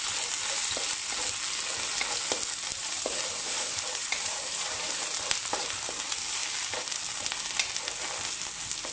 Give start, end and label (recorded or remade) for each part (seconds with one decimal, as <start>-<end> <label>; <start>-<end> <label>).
0.0-2.7 recorded; 2.7-6.0 remade; 6.0-8.9 recorded